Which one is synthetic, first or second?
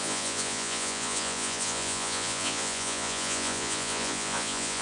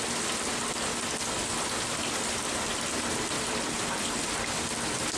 first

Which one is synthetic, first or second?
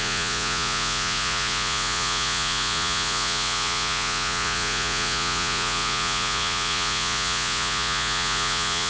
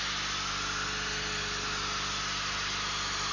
first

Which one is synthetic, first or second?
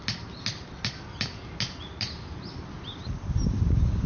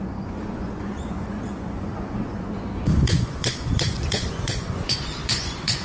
second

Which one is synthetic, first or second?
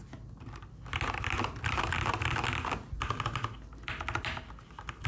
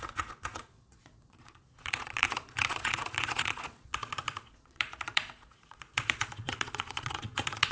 second